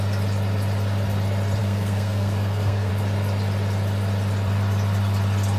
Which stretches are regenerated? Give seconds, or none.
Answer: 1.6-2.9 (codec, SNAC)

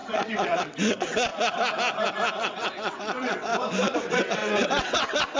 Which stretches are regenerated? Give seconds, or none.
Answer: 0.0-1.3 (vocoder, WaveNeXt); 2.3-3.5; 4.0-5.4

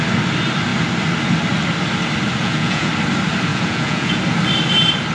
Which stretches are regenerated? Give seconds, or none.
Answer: 2.4-2.9 (vocoder, Vocos); 3.5-4.2

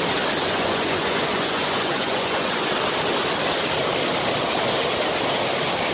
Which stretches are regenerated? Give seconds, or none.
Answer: 0.4-2.7 (vocoder, Vocos)

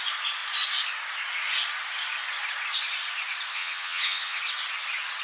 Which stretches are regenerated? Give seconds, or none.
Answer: 3.5-4.4 (vocoder, HiFi-GAN)